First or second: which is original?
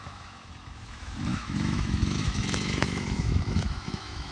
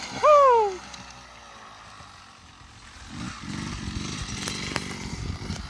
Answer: second